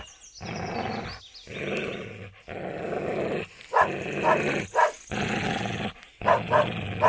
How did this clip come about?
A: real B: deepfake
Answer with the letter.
A